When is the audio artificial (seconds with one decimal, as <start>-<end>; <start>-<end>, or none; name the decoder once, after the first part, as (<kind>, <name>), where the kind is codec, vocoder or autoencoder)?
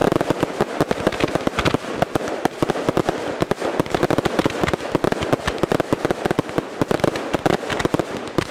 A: none